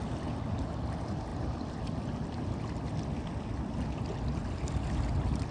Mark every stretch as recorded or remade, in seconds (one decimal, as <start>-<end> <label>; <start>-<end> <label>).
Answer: 0.0-5.5 recorded